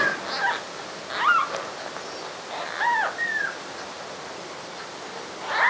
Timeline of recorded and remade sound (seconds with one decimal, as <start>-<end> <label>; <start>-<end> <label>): 0.0-5.7 recorded